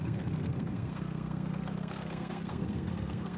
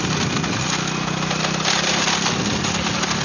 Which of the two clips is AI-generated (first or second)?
first